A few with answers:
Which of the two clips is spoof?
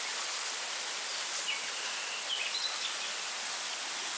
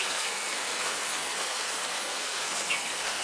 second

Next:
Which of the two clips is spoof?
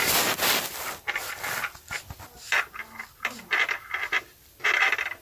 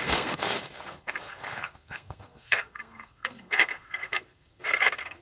second